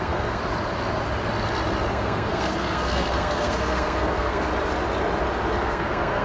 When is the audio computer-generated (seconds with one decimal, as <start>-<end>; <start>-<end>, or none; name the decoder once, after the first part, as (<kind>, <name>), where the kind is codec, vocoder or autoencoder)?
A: 0.0-0.4 (codec, SNAC); 1.9-4.5; 5.6-6.2